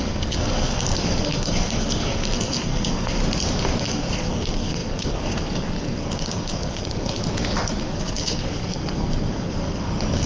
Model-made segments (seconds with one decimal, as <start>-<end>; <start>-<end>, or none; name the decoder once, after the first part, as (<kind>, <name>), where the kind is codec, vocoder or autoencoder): 0.0-3.2 (codec, SNAC); 3.8-7.2; 7.8-10.3